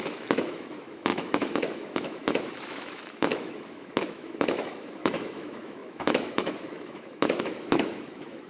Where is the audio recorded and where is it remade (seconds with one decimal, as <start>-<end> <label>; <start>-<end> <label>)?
0.0-8.5 remade